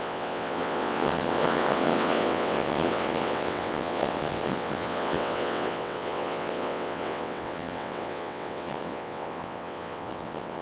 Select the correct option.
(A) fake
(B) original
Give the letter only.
A